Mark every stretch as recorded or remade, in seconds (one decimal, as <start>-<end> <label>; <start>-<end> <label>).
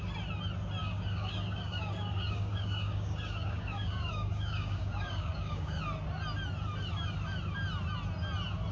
0.0-0.8 recorded; 0.8-5.8 remade; 5.8-8.7 recorded